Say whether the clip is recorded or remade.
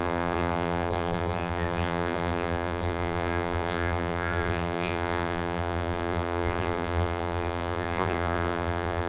remade